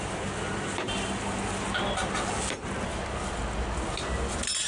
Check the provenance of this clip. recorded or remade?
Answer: recorded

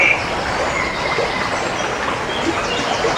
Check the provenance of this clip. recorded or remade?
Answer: recorded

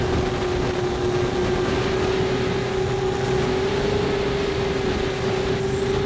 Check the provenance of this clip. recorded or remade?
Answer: recorded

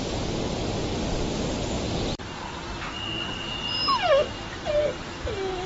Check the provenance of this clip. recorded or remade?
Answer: recorded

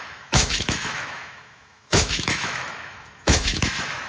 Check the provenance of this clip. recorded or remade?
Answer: remade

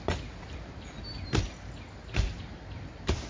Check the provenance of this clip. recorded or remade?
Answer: recorded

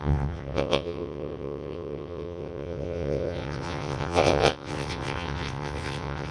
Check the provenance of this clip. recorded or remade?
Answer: remade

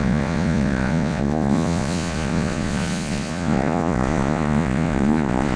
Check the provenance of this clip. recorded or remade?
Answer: remade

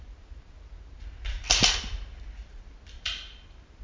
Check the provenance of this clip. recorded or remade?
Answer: recorded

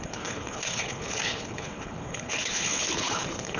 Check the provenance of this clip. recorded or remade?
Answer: remade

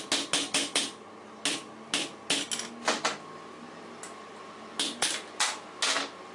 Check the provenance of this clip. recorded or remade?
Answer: recorded